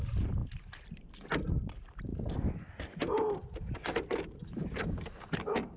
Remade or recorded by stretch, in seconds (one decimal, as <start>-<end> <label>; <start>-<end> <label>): 0.0-0.4 remade; 0.4-1.6 recorded; 1.6-2.1 remade; 2.1-3.4 recorded; 3.4-5.8 remade